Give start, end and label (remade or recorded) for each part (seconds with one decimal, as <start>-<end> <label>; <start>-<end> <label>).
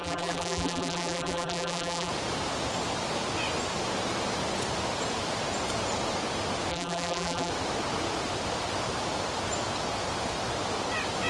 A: 0.0-2.1 remade; 2.1-6.7 recorded; 6.7-7.5 remade; 7.5-11.3 recorded